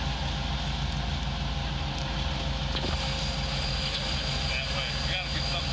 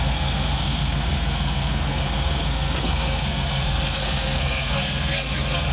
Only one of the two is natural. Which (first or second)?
first